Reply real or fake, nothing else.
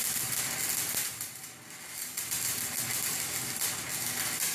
real